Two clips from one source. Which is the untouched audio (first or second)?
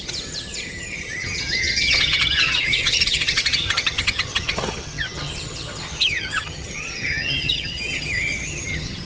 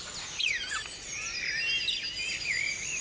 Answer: second